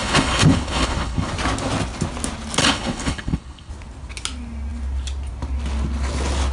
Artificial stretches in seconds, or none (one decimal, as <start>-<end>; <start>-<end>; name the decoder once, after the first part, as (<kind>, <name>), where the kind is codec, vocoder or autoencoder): 0.0-1.3 (codec, HILCodec); 2.6-3.7